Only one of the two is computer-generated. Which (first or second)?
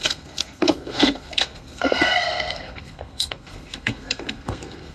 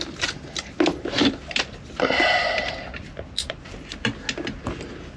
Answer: first